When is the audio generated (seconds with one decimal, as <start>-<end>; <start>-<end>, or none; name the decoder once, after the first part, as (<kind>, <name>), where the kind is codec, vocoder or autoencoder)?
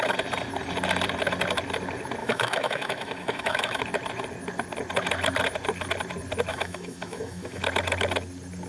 2.2-3.8 (autoencoder, DAC-VAE); 6.5-7.6